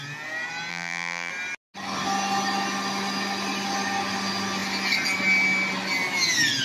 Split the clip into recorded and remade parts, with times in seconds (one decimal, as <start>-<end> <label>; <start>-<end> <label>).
0.0-0.7 recorded; 0.7-1.3 remade; 1.3-6.6 recorded